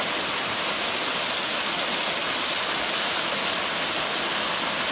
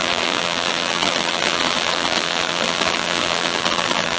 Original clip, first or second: first